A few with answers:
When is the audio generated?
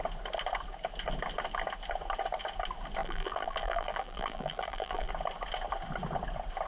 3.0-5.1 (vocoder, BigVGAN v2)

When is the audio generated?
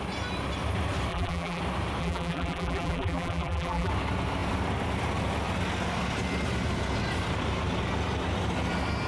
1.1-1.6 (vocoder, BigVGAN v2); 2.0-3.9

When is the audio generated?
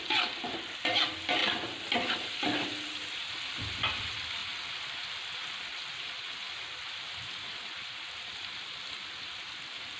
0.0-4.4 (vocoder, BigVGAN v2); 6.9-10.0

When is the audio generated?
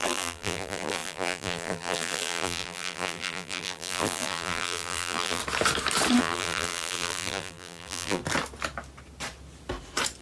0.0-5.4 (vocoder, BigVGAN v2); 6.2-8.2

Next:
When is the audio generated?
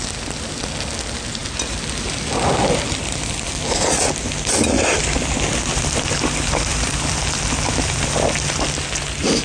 3.0-3.5 (vocoder, BigVGAN v2); 6.7-7.2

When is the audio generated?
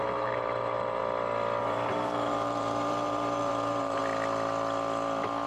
0.0-1.0 (vocoder, BigVGAN v2); 1.6-4.0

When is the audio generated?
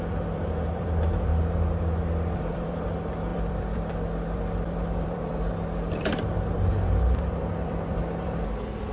0.0-1.3 (vocoder, BigVGAN v2); 2.5-8.9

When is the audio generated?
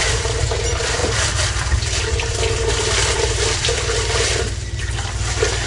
0.0-5.7 (vocoder, BigVGAN v2)